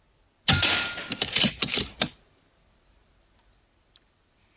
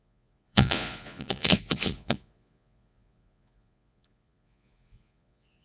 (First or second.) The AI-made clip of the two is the second